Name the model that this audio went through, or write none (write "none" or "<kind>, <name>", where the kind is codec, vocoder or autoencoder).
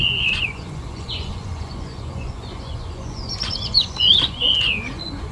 vocoder, Vocos